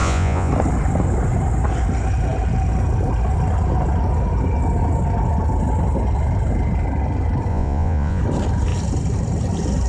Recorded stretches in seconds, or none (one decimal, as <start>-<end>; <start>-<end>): 0.5-7.5; 8.2-9.9